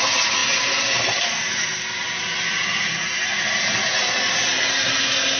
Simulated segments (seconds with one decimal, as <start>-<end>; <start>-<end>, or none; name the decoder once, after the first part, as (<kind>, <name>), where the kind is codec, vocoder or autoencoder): none